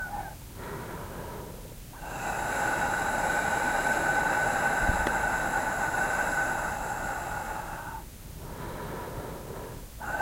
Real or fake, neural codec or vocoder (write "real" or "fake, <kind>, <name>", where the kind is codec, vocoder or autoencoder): real